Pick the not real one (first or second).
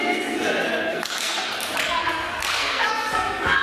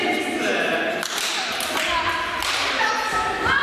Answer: first